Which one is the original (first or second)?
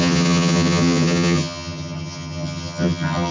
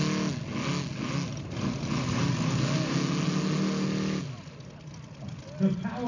second